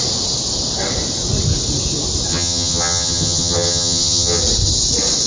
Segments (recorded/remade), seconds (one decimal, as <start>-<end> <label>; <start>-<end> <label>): 0.0-2.3 recorded; 2.3-4.4 remade; 4.4-5.3 recorded